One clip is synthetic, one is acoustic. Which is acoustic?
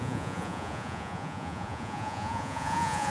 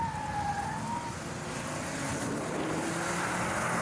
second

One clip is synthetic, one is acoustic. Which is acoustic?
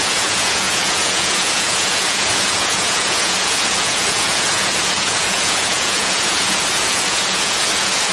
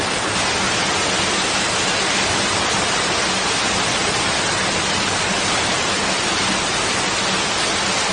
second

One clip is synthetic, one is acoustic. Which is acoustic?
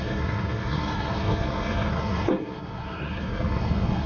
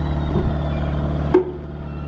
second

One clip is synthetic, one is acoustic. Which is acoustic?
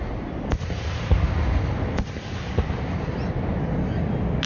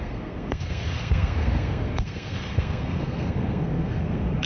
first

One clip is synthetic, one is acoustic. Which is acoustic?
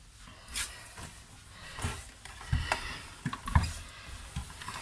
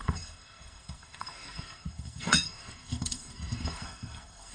first